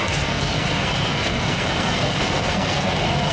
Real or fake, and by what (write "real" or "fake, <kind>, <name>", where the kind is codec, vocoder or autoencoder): fake, codec, SNAC